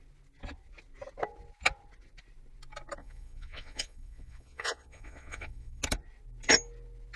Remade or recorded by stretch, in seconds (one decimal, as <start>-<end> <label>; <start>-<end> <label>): 0.0-3.0 recorded; 3.0-5.8 remade; 5.8-7.2 recorded